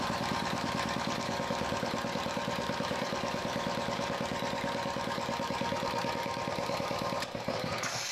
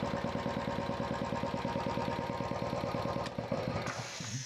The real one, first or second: second